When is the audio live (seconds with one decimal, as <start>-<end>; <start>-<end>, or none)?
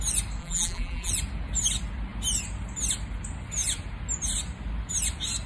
0.0-0.4; 1.1-5.5